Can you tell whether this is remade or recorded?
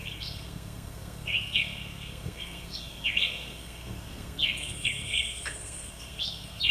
remade